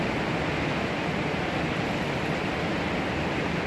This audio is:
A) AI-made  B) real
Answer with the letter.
B